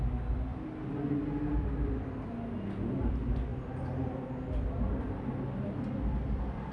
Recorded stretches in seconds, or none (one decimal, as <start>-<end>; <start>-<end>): 0.0-6.7